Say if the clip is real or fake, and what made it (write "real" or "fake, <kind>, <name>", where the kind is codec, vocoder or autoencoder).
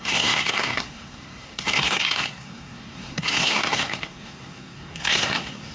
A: fake, codec, SNAC